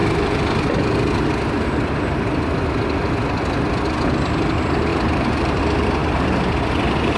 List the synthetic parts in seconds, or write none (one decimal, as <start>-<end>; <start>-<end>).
4.9-5.6

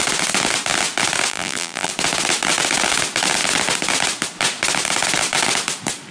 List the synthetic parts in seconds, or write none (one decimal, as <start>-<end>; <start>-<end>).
1.3-1.9

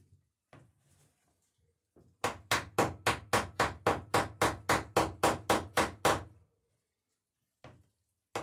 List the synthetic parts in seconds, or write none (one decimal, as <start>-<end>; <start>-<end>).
none

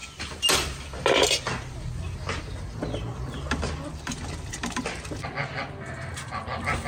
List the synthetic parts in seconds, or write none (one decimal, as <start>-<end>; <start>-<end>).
none

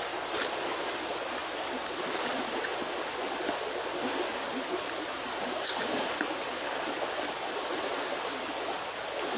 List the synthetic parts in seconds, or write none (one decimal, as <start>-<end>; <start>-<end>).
5.1-6.3

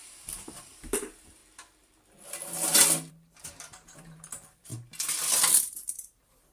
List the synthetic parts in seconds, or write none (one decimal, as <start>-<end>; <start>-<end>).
0.0-1.4; 3.1-4.7; 5.6-6.5